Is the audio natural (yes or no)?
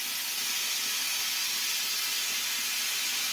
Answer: yes